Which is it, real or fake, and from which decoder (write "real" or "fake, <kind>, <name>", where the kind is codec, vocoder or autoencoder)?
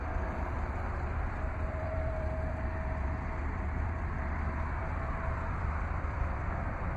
fake, vocoder, BigVGAN v2